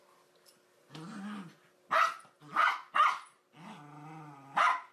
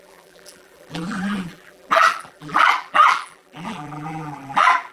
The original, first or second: first